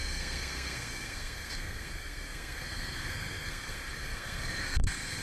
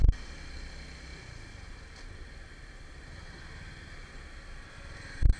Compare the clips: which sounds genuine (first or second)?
second